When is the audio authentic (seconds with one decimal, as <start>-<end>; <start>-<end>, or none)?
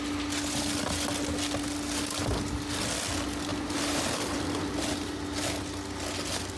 0.0-3.5; 4.0-6.6